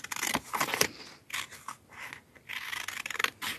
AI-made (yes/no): no